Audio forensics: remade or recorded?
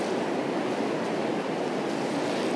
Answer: recorded